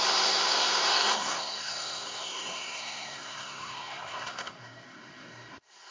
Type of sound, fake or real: fake